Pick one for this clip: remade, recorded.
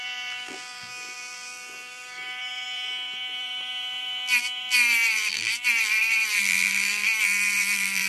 remade